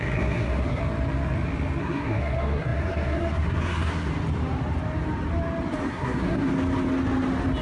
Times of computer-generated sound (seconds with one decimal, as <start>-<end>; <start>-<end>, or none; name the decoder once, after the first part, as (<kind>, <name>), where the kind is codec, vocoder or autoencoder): 0.0-0.8 (codec, SNAC); 1.8-4.1; 5.9-6.5